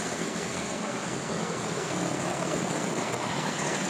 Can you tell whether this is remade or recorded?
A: remade